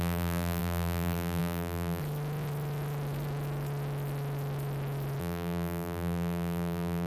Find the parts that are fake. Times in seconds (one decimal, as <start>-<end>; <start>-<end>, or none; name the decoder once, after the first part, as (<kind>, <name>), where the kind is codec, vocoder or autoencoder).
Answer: 0.0-2.0 (vocoder, BigVGAN v2); 5.2-7.1